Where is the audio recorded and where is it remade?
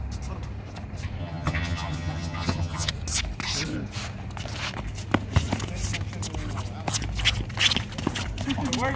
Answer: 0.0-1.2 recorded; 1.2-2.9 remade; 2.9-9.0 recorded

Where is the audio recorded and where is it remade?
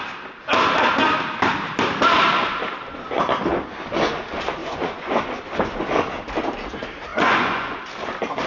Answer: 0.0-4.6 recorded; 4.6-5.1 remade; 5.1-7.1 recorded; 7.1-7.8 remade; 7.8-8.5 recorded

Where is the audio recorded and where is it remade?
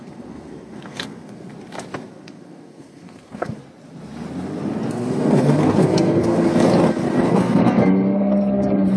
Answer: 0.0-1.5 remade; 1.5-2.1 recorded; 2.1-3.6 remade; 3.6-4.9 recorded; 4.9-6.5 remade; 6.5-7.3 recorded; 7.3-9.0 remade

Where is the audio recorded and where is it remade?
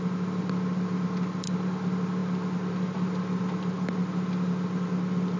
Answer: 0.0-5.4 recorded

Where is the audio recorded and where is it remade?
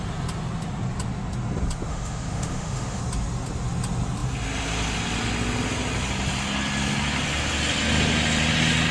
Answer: 0.0-1.9 recorded; 1.9-3.0 remade; 3.0-8.9 recorded